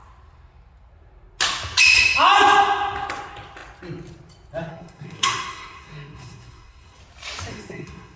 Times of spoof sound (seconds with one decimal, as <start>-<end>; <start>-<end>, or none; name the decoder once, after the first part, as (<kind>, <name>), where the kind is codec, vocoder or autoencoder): 4.7-7.0 (codec, SNAC); 7.5-8.2